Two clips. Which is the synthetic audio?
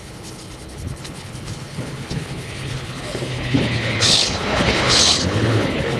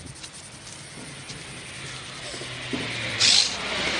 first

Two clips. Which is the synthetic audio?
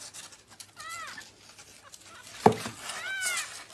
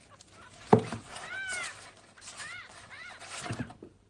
second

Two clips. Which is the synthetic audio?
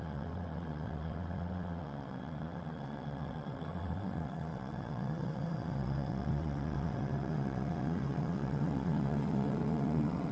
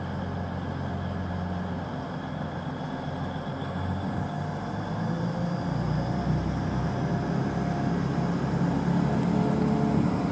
first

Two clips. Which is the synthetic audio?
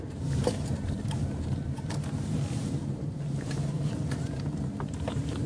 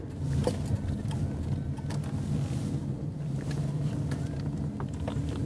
first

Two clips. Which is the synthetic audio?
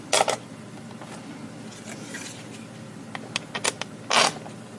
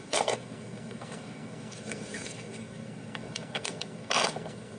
second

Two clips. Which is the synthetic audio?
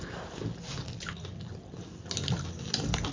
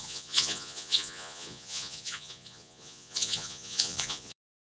second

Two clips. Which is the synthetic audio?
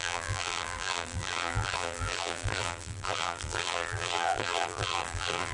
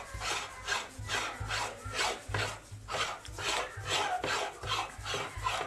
first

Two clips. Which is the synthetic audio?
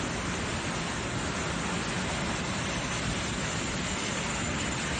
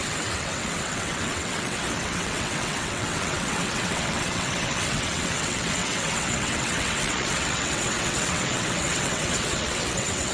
second